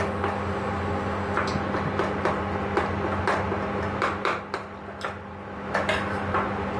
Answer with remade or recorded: recorded